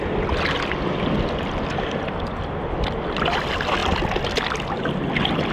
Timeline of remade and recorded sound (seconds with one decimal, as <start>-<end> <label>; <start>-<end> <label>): 0.0-5.5 recorded